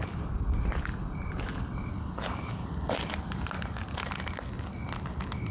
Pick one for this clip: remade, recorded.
recorded